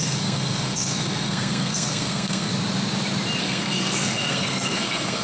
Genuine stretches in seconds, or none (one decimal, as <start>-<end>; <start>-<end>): 2.5-3.4